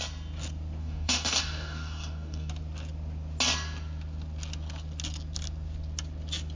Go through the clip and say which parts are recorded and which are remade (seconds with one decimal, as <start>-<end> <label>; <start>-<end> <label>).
0.0-0.8 recorded; 0.8-2.5 remade; 2.5-6.6 recorded